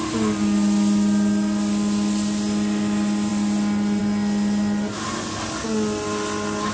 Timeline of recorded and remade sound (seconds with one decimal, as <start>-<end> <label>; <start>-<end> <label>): 0.0-6.7 recorded